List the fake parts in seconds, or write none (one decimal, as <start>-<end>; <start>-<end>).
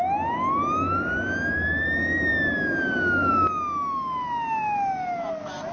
none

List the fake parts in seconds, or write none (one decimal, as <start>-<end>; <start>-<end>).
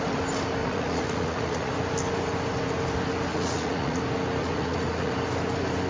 0.6-1.7; 3.3-4.0; 4.4-5.1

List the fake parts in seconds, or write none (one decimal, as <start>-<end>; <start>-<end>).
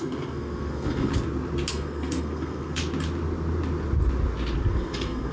0.0-1.1; 1.7-2.8; 4.7-5.3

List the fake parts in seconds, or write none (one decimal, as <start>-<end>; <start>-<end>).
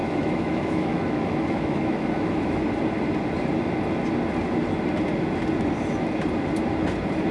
0.0-2.6